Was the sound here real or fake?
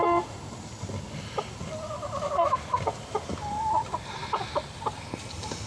real